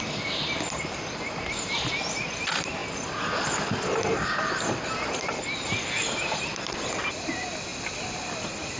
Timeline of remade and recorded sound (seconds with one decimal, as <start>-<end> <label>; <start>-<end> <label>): 0.0-8.8 recorded